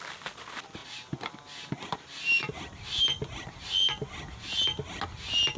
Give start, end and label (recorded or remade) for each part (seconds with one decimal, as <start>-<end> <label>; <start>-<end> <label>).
0.0-5.6 recorded